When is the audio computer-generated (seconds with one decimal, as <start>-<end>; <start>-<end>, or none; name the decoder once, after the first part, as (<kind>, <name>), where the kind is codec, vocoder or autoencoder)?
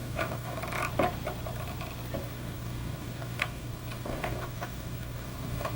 0.0-0.6 (codec, DAC); 2.2-5.8